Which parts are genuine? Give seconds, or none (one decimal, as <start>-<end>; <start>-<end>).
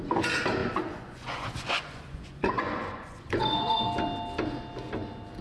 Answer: 0.0-0.6; 3.8-5.4